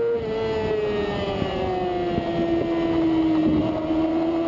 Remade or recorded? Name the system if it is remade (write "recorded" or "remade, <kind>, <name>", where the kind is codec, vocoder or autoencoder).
recorded